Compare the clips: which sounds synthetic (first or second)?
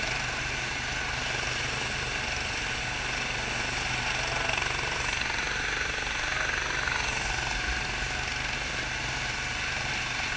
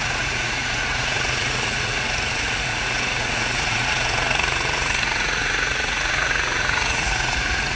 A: second